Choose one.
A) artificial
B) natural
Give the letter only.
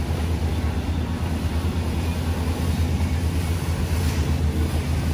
B